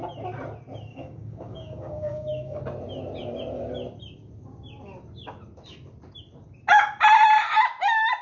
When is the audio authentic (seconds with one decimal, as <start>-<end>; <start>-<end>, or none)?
0.0-0.9; 2.6-8.2